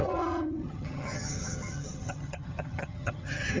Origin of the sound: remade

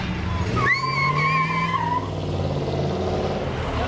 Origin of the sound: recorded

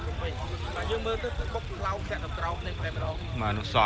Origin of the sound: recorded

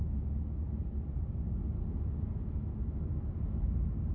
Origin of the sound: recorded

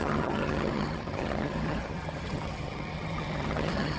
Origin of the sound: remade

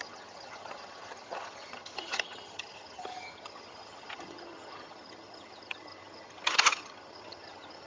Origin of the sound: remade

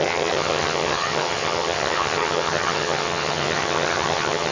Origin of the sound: remade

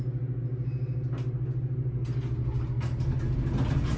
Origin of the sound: recorded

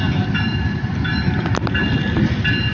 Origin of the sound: recorded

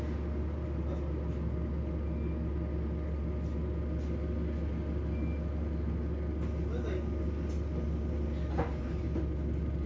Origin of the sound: recorded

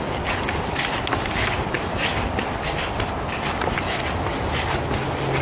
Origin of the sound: recorded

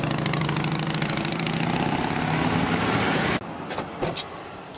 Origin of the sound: recorded